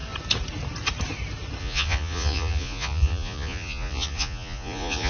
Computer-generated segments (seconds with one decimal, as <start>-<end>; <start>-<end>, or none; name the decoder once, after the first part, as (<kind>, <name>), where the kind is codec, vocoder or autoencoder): 1.6-5.1 (vocoder, Vocos)